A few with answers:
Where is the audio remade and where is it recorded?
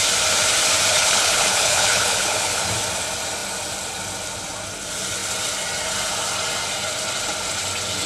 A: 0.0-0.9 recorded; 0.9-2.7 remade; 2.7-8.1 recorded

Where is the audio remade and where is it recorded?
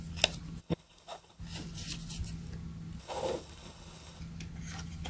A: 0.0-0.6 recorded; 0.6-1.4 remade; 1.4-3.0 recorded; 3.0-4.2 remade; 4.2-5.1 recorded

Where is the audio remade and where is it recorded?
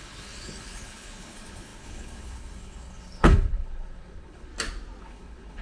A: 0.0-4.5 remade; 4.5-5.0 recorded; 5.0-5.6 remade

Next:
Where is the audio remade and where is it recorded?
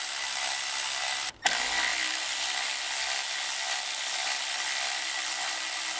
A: 0.0-6.0 recorded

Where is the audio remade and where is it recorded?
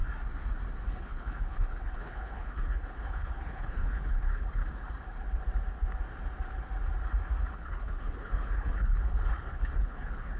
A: 0.0-0.8 recorded; 0.8-4.6 remade; 4.6-7.5 recorded; 7.5-10.4 remade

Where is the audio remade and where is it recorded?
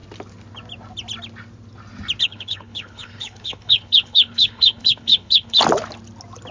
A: 0.0-2.2 recorded; 2.2-5.6 remade; 5.6-6.5 recorded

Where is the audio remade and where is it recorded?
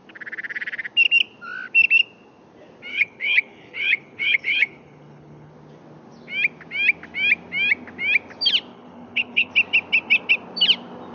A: 0.0-2.9 recorded; 2.9-5.5 remade; 5.5-8.7 recorded; 8.7-9.5 remade; 9.5-11.1 recorded